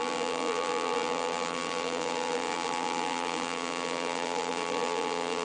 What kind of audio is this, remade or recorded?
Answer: remade